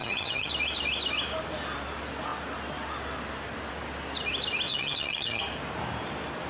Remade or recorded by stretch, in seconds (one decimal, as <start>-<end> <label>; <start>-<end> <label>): 0.0-0.5 remade; 0.5-4.7 recorded; 4.7-5.4 remade; 5.4-6.5 recorded